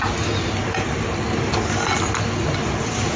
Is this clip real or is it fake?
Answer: real